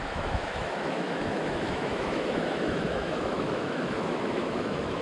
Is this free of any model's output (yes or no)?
no